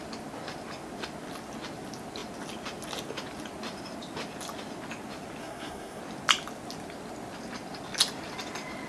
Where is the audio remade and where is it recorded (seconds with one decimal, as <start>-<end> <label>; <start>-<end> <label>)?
0.0-5.4 recorded; 5.4-6.0 remade; 6.0-8.9 recorded